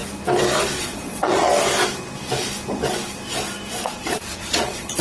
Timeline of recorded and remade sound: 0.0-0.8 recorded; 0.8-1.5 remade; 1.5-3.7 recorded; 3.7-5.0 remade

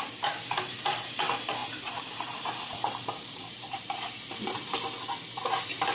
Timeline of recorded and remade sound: 0.0-1.6 recorded; 1.6-4.8 remade; 4.8-5.9 recorded

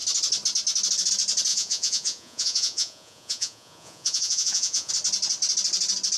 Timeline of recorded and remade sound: 0.0-1.5 recorded; 1.5-4.9 remade; 4.9-6.2 recorded

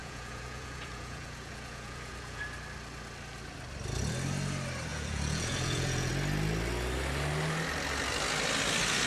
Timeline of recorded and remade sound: 0.0-2.4 remade; 2.4-4.9 recorded; 4.9-6.1 remade; 6.1-9.1 recorded

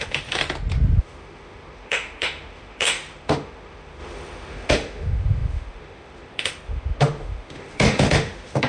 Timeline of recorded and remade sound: 0.0-0.4 remade; 0.4-1.0 recorded; 1.0-8.7 remade